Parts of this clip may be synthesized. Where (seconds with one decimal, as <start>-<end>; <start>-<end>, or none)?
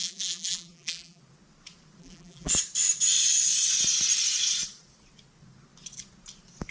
0.0-1.2; 2.0-2.5